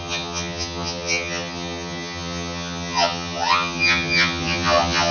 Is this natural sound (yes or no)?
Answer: no